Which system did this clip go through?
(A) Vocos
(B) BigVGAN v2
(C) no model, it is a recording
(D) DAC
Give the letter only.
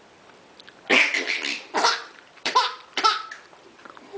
B